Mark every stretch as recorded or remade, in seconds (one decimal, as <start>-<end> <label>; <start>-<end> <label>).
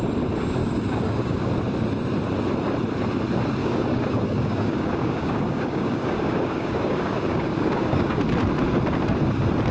0.0-0.6 recorded; 0.6-1.5 remade; 1.5-3.6 recorded; 3.6-8.2 remade; 8.2-9.7 recorded